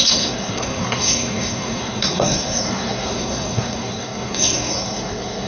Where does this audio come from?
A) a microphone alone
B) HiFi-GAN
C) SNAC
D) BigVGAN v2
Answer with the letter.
C